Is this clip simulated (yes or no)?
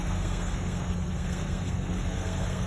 yes